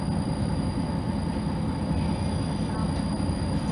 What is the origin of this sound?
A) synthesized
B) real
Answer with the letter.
B